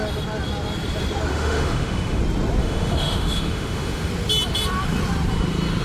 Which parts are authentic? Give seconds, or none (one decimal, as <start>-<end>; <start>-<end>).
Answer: 0.0-1.3; 2.2-2.6; 4.1-5.8